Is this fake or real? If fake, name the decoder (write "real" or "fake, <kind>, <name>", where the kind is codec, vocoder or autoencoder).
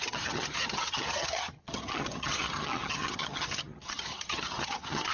fake, vocoder, HiFi-GAN